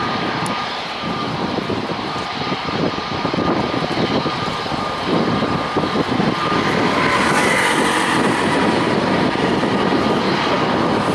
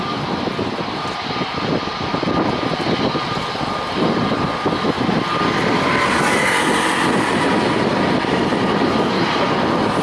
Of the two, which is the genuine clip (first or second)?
second